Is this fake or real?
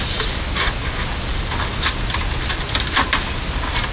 real